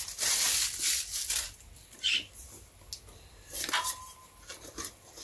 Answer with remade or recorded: recorded